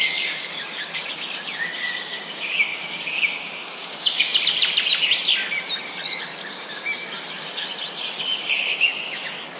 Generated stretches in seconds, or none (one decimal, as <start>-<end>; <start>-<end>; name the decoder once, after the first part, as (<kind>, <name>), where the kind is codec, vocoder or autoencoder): 0.0-4.3 (codec, DAC); 6.5-7.7; 8.2-9.6